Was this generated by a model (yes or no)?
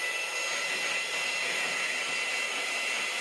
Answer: no